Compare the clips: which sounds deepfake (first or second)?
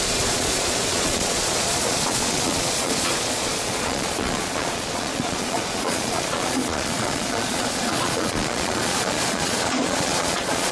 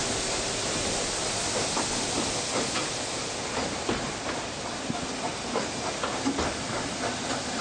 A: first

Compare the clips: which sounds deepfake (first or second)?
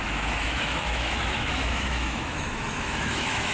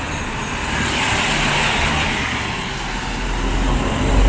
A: first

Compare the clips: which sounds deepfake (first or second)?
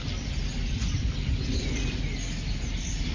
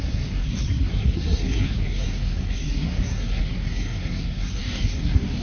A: second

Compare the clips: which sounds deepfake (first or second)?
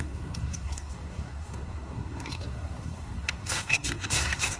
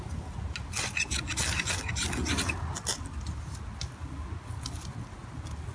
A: first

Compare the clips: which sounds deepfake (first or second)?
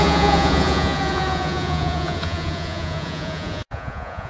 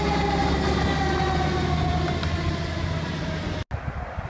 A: first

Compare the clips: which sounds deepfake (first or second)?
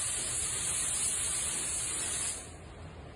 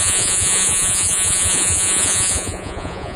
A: second